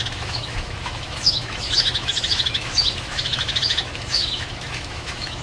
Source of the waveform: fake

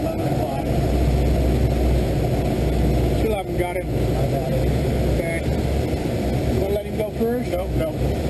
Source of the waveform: real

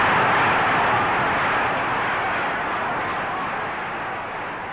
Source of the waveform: real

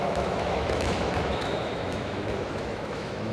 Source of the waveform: fake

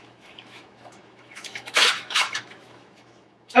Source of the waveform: fake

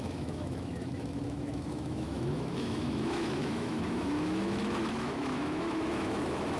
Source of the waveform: fake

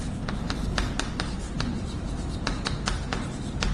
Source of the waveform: real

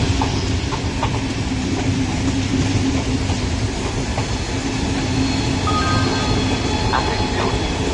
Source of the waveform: real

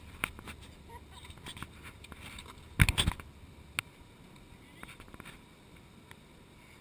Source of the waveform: real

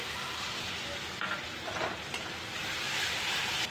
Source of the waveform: real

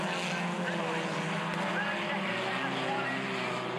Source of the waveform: real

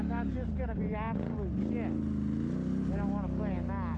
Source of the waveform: real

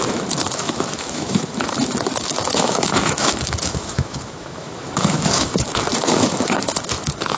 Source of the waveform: fake